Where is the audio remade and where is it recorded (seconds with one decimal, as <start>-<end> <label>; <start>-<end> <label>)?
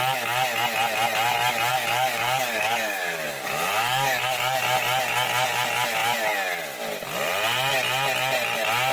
0.0-1.7 recorded; 1.7-4.6 remade; 4.6-8.9 recorded